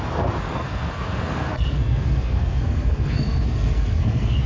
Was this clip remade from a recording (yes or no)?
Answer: yes